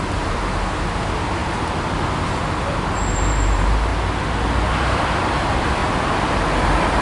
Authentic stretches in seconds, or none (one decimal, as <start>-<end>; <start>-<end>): 1.4-2.6; 3.9-4.7; 5.8-7.0